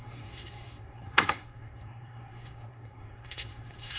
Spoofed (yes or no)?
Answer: yes